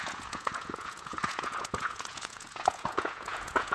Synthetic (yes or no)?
yes